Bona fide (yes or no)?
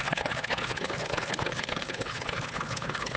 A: no